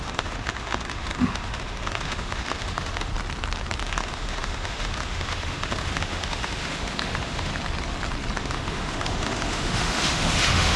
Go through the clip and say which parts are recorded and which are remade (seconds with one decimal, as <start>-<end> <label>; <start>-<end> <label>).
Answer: 0.0-3.1 remade; 3.1-3.8 recorded; 3.8-7.5 remade; 7.5-8.4 recorded; 8.4-10.8 remade